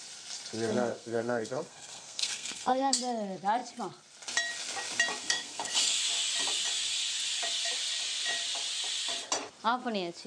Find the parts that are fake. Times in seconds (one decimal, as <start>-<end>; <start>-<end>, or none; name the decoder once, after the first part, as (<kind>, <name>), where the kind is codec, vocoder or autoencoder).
0.7-3.0 (codec, SNAC); 5.2-6.0